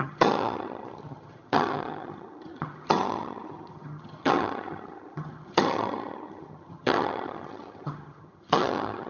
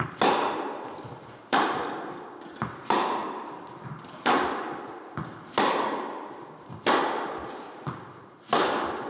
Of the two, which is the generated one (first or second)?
first